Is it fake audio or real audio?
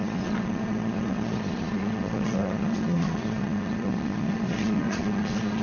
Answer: fake